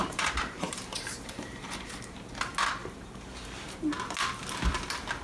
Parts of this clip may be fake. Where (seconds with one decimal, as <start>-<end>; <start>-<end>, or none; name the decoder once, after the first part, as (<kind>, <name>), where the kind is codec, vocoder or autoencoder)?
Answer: 0.0-2.4 (vocoder, BigVGAN v2); 2.8-3.8

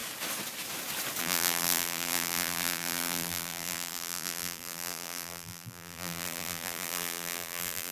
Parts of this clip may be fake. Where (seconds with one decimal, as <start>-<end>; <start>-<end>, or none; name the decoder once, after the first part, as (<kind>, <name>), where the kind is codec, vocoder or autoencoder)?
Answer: 1.2-7.9 (vocoder, BigVGAN v2)

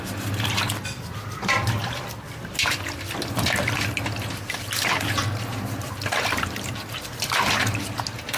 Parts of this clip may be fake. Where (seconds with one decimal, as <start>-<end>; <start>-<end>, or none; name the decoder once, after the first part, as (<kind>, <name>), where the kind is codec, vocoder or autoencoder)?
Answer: 0.0-1.8 (vocoder, BigVGAN v2); 5.2-7.6

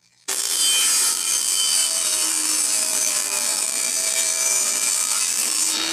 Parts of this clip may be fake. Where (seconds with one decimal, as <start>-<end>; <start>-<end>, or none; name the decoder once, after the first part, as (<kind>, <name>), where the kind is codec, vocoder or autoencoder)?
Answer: 0.0-0.6 (vocoder, BigVGAN v2); 1.1-5.9

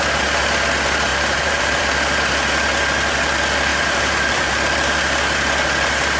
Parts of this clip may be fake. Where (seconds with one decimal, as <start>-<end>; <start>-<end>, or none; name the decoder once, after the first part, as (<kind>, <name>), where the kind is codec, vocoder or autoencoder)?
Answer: 1.1-1.8 (vocoder, BigVGAN v2); 3.7-4.5